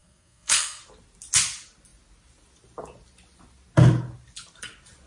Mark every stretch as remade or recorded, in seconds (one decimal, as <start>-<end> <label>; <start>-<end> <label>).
0.0-0.8 remade; 0.8-5.1 recorded